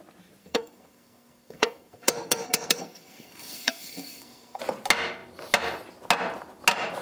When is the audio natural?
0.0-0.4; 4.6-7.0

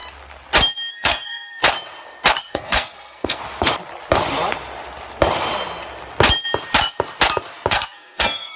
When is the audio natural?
0.0-0.9; 1.6-2.5; 3.4-7.7

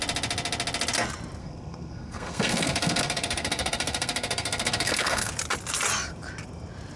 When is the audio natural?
0.0-1.4; 5.3-7.0

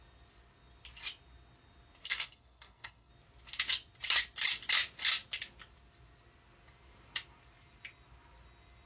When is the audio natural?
0.0-2.0; 3.1-8.9

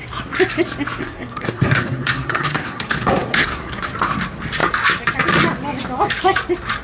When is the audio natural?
0.0-1.0; 3.9-6.8

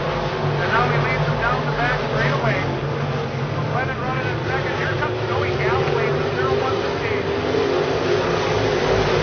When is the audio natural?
0.0-9.2